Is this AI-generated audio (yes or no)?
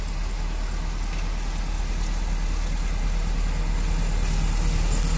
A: no